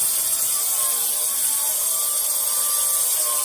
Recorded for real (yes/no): yes